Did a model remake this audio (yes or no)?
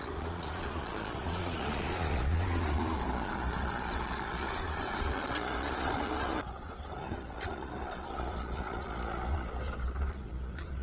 yes